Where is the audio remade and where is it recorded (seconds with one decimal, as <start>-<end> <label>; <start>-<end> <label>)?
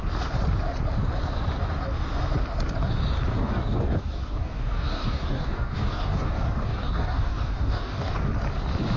0.0-3.3 recorded; 3.3-8.3 remade; 8.3-9.0 recorded